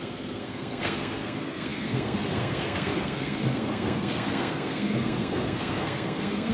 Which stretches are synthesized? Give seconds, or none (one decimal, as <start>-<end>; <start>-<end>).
0.0-6.5